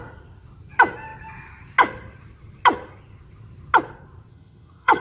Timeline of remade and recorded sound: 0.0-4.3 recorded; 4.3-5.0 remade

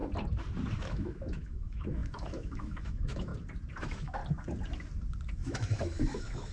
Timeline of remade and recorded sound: 0.0-0.8 recorded; 0.8-3.3 remade; 3.3-3.8 recorded; 3.8-4.2 remade; 4.2-5.3 recorded; 5.3-6.5 remade

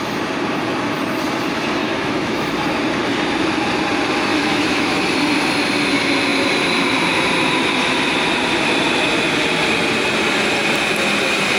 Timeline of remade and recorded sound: 0.0-1.8 recorded; 1.8-2.5 remade; 2.5-4.3 recorded; 4.3-5.0 remade; 5.0-11.6 recorded